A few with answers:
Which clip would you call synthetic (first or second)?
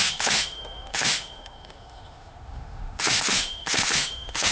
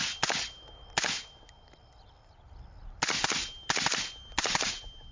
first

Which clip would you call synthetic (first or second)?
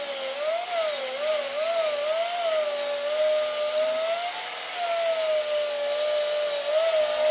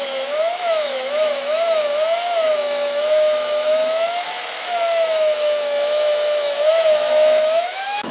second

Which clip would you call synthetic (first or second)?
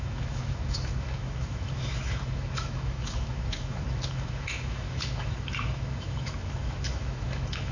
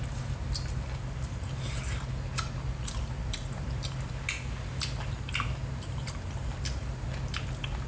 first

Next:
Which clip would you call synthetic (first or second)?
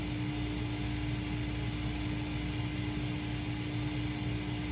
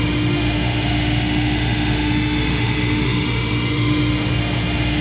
second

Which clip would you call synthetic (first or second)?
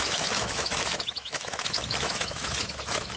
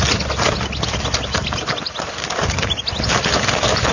first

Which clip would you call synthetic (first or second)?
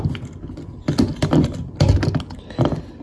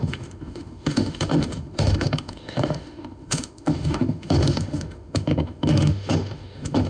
second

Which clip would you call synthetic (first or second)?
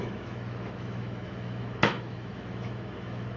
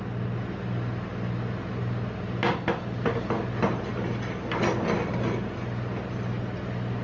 first